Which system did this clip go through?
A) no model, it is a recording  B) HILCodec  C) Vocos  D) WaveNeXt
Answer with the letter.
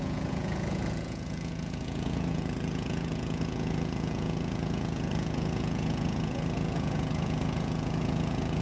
C